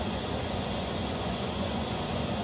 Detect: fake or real fake